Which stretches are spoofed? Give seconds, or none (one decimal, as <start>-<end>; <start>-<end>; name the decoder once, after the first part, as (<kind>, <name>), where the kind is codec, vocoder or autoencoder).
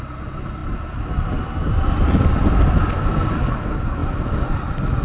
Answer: 0.6-3.6 (vocoder, BigVGAN v2)